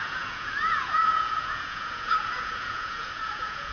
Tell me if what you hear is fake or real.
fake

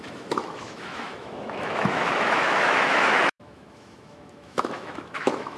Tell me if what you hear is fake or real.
fake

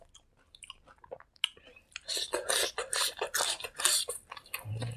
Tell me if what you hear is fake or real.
real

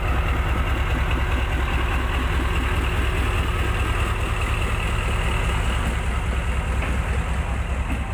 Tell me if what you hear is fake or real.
real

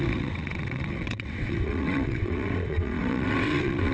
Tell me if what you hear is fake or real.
fake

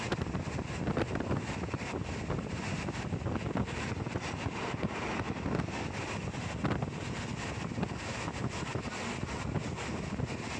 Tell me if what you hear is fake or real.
real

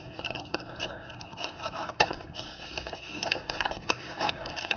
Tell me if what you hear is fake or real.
fake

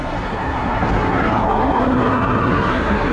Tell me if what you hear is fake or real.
fake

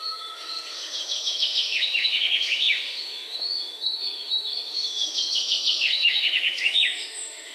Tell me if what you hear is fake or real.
fake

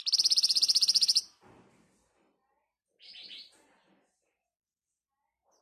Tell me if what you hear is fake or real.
fake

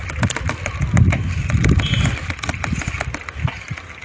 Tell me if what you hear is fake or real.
real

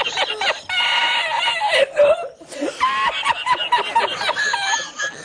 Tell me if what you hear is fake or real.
real